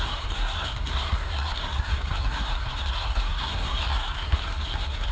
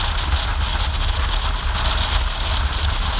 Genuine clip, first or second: second